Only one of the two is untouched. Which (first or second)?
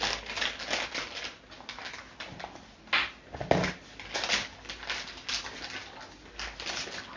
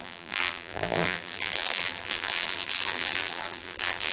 first